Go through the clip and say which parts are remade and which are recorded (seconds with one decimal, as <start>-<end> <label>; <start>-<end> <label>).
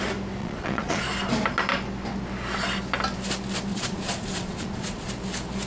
0.0-0.4 recorded; 0.4-1.0 remade; 1.0-3.7 recorded; 3.7-5.1 remade; 5.1-5.7 recorded